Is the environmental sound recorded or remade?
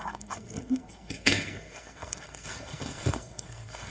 remade